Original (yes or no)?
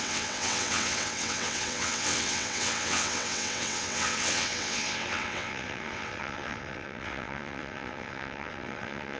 no